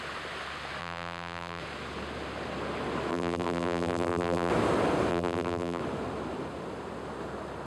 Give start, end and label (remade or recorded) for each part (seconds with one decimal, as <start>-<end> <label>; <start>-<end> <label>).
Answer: 0.0-0.8 recorded; 0.8-1.6 remade; 1.6-3.1 recorded; 3.1-4.5 remade; 4.5-5.1 recorded; 5.1-5.8 remade; 5.8-7.7 recorded